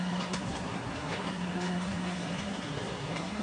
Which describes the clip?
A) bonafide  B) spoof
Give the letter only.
B